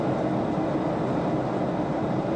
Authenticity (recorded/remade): recorded